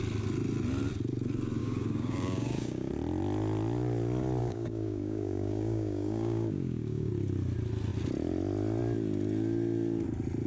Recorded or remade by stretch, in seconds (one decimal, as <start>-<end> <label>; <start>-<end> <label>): 0.0-1.6 recorded; 1.6-2.9 remade; 2.9-4.4 recorded; 4.4-7.1 remade; 7.1-10.5 recorded

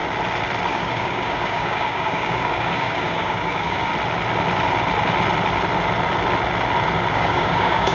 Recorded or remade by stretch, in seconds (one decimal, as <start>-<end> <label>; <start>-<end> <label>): 0.0-0.7 recorded; 0.7-3.9 remade; 3.9-7.1 recorded; 7.1-7.9 remade

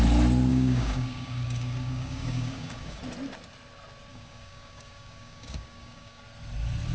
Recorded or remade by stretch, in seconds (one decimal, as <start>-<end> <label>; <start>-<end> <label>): 0.0-0.5 recorded; 0.5-3.0 remade; 3.0-4.1 recorded; 4.1-6.2 remade; 6.2-6.9 recorded

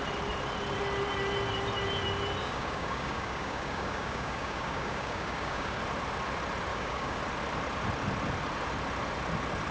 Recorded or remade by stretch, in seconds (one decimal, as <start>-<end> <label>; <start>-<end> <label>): 0.0-2.4 recorded; 2.4-5.8 remade; 5.8-6.7 recorded; 6.7-7.2 remade; 7.2-9.7 recorded

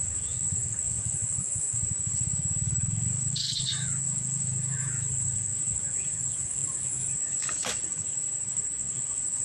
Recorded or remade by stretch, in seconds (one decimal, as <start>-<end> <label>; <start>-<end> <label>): 0.0-9.4 remade

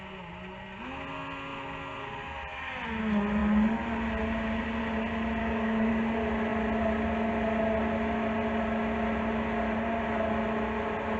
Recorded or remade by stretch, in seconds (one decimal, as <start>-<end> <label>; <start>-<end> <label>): 0.0-5.4 recorded; 5.4-5.9 remade; 5.9-11.2 recorded

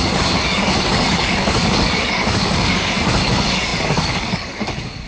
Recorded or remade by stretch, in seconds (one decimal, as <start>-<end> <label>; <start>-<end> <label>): 0.0-5.1 remade